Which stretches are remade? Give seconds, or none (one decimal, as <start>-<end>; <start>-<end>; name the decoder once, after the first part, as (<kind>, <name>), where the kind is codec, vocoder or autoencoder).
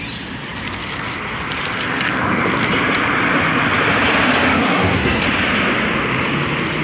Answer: 4.6-5.2 (codec, SNAC)